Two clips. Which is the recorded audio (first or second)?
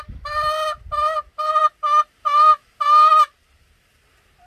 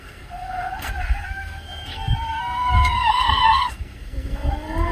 first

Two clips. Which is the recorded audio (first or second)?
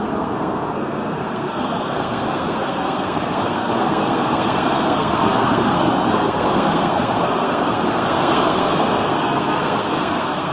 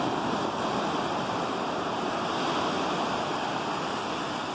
second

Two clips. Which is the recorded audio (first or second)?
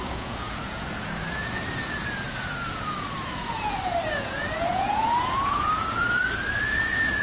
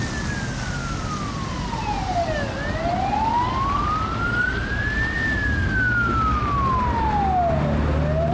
second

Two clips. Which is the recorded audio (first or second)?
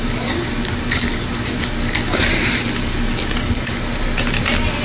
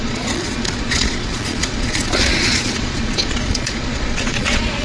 first